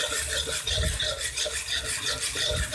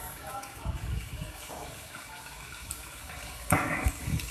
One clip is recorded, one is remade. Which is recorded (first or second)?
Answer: first